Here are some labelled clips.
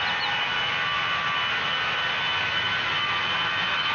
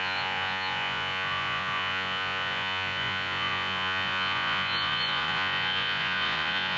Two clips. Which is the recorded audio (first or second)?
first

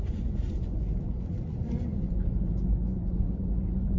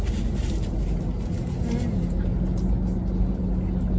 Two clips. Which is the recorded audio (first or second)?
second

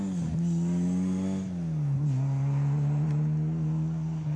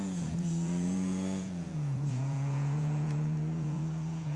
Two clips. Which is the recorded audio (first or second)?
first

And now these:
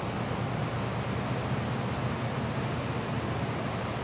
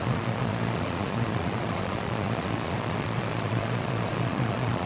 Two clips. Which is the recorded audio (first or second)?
first